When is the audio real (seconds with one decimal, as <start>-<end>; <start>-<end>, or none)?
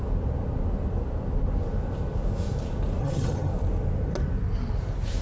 0.0-3.0; 3.5-5.2